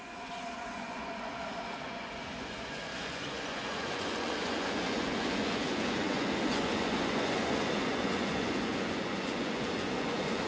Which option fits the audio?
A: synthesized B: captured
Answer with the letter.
A